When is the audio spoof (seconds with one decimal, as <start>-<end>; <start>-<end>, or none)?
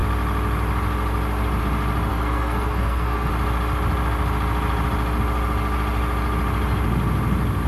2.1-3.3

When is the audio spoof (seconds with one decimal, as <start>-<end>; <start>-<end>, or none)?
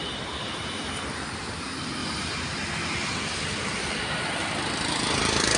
2.0-5.6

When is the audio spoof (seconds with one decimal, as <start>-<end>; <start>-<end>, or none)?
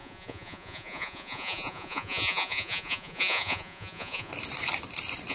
0.0-4.3